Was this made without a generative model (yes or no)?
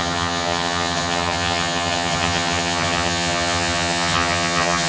no